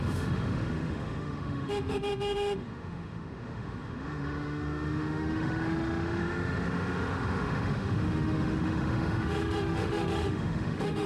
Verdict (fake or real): fake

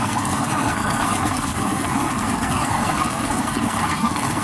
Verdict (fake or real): fake